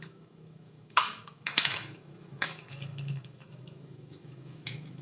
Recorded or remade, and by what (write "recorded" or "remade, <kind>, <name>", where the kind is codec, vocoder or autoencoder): remade, autoencoder, DAC-VAE